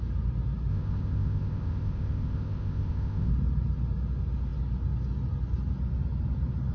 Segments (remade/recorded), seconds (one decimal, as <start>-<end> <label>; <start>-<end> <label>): 0.0-0.7 recorded; 0.7-3.3 remade; 3.3-6.7 recorded